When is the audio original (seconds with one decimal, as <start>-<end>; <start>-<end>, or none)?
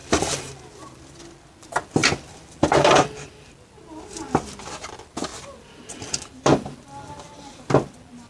1.0-2.0; 3.5-5.3; 7.6-8.3